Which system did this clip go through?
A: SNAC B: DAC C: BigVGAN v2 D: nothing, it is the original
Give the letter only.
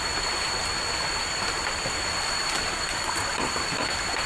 D